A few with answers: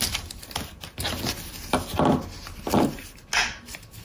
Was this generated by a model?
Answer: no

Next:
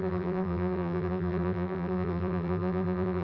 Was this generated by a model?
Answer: yes